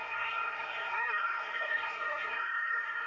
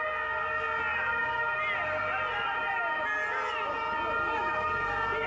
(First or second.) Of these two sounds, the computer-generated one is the first